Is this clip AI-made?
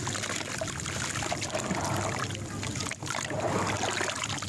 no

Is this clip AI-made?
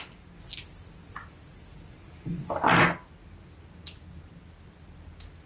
no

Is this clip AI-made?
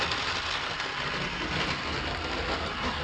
no